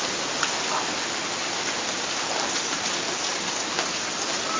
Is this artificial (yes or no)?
no